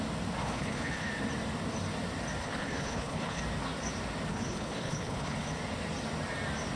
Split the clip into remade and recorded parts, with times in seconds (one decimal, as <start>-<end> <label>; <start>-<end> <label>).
0.0-0.4 recorded; 0.4-1.1 remade; 1.1-2.4 recorded; 2.4-3.4 remade; 3.4-4.3 recorded; 4.3-5.5 remade; 5.5-6.8 recorded